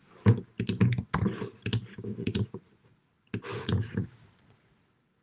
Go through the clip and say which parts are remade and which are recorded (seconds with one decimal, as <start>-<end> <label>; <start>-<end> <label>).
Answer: 0.0-2.2 recorded; 2.2-3.1 remade; 3.1-3.6 recorded; 3.6-4.8 remade; 4.8-5.2 recorded